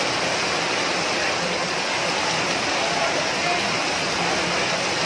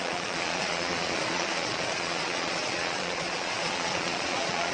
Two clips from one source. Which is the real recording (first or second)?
first